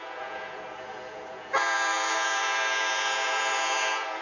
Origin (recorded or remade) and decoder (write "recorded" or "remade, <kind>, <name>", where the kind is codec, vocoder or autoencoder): remade, vocoder, Vocos